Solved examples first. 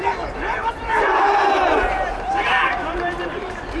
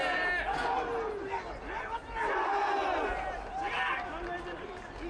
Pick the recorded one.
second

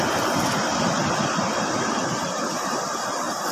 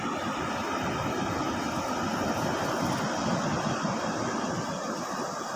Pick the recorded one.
second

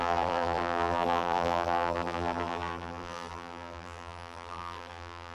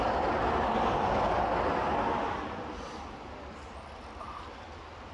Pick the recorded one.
second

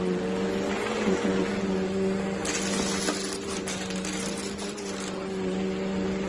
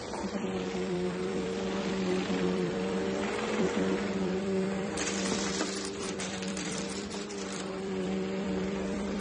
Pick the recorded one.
first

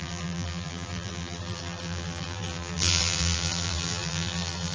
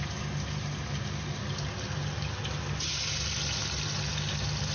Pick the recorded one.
second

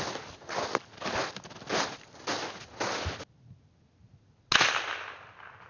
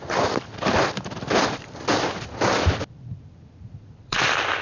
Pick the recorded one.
first